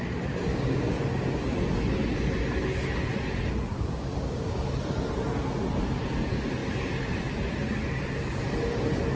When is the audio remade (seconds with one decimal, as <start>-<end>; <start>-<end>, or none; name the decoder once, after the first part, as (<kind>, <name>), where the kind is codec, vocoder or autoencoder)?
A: 0.5-1.0 (codec, DAC); 3.7-4.6